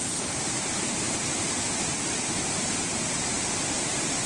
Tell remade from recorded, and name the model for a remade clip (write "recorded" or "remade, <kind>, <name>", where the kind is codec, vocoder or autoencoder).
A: remade, vocoder, BigVGAN v2